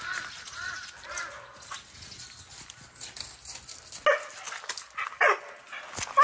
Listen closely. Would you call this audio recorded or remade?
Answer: recorded